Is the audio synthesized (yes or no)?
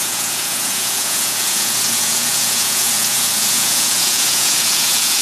yes